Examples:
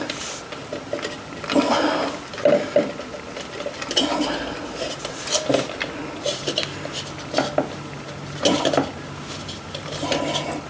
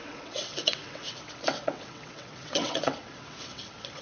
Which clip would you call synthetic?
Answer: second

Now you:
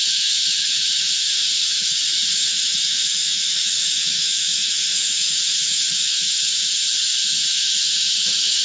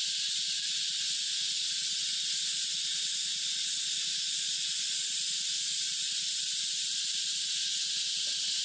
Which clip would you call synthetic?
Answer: first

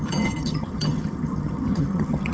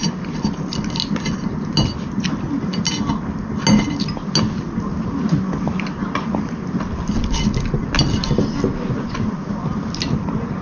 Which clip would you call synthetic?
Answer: first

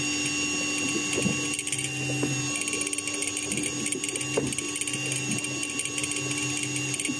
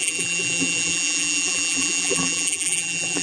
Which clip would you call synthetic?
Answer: second